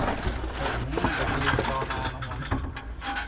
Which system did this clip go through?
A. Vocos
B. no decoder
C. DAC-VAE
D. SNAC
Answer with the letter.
B